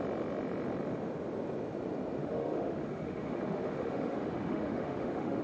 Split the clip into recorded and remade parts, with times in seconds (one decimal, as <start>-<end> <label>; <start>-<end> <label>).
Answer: 0.0-2.2 recorded; 2.2-5.4 remade